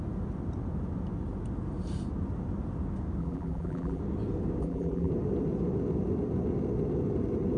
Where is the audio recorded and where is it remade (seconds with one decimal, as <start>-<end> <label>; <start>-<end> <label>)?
0.0-3.2 recorded; 3.2-4.0 remade; 4.0-4.6 recorded; 4.6-5.1 remade; 5.1-7.6 recorded